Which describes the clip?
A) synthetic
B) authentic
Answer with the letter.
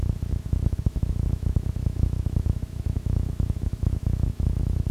A